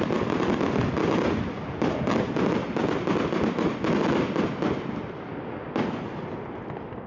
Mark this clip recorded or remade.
recorded